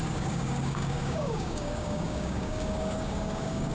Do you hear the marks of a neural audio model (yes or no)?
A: yes